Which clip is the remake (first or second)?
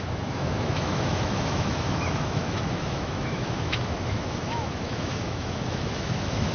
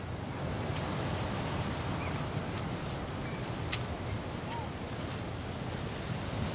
first